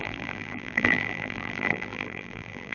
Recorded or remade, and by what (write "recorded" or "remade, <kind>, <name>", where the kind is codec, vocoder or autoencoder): remade, vocoder, BigVGAN v2